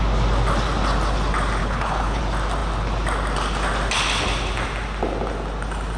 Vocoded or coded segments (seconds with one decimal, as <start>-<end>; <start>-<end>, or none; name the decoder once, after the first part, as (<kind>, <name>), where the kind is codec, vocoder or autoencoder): 1.6-2.2 (codec, HILCodec)